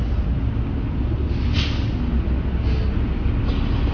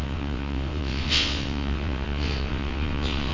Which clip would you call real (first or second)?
first